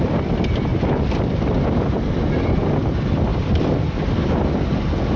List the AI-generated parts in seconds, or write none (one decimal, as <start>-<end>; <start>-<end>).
0.7-2.7; 3.3-4.3